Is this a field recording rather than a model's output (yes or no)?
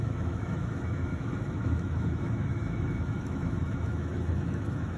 no